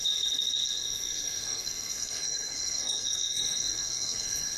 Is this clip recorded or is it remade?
remade